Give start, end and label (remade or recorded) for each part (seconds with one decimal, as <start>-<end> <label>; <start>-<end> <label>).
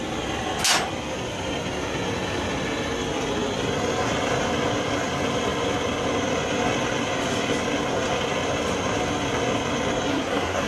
0.0-10.1 recorded; 10.1-10.7 remade